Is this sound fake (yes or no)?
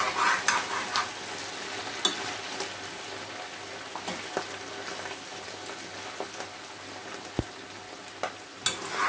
no